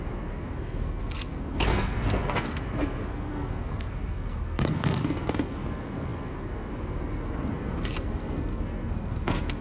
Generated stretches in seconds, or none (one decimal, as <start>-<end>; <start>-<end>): 0.0-9.6